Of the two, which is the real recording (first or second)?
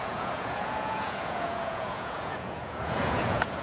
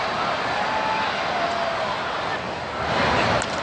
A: second